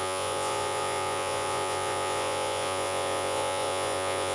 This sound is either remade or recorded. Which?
remade